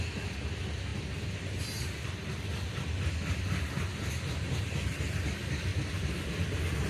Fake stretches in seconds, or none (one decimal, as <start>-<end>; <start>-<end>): 0.9-1.6; 3.9-4.6; 5.7-6.3